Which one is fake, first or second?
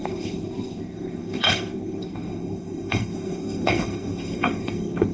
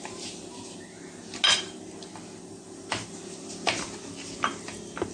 first